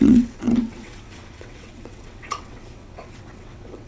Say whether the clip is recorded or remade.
remade